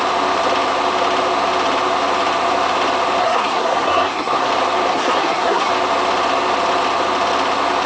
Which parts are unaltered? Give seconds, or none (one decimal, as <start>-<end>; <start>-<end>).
0.0-3.2; 4.5-4.9; 5.7-7.9